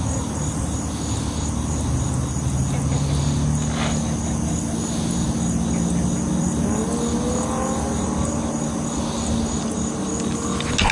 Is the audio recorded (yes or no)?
yes